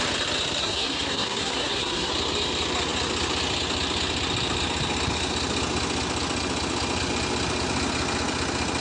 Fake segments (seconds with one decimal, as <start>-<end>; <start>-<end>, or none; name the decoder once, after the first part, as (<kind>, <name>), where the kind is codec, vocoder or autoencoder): 0.6-2.1 (codec, SNAC)